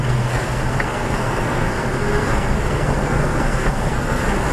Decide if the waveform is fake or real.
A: fake